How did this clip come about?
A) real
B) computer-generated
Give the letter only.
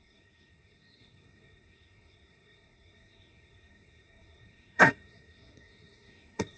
B